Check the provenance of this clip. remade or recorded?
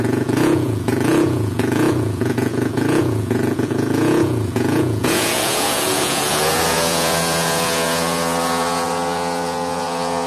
remade